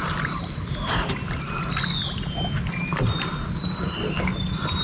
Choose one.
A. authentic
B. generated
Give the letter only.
A